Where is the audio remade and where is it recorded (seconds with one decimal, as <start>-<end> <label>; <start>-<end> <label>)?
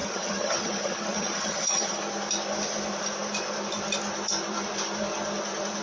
0.0-2.0 remade; 2.0-5.8 recorded